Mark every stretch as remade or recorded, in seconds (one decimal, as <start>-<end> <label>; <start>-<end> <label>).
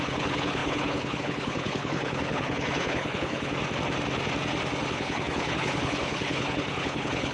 0.0-3.5 remade; 3.5-4.9 recorded; 4.9-7.3 remade